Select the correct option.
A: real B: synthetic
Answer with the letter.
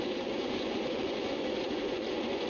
B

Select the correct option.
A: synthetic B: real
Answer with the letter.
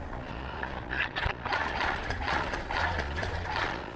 A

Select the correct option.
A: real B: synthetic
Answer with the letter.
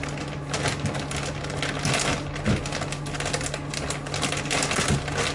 A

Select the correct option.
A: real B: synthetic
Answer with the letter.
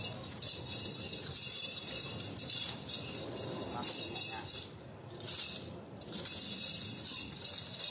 A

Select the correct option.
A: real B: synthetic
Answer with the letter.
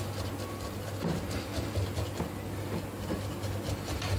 A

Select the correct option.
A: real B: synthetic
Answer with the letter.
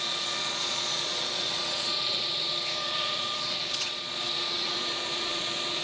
B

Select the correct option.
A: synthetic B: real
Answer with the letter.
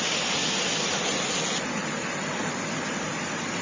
B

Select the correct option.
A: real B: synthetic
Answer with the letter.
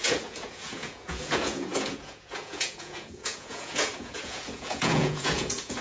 B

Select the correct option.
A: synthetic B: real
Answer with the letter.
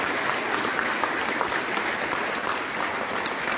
B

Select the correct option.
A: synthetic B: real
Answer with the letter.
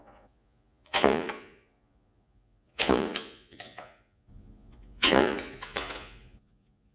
A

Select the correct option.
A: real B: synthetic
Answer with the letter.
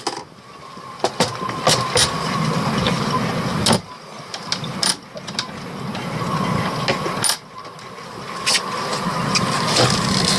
A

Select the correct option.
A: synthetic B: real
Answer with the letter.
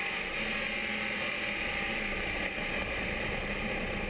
B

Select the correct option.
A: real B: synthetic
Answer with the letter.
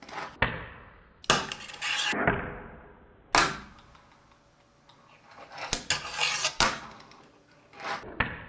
A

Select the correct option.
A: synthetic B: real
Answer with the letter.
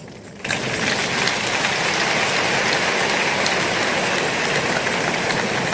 B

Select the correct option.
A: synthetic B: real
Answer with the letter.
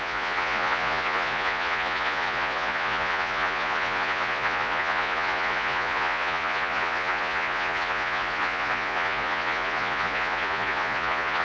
A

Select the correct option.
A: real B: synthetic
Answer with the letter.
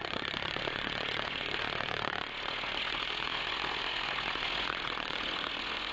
B